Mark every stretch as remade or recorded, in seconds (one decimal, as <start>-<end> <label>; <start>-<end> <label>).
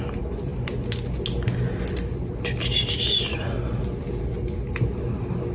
0.0-5.5 recorded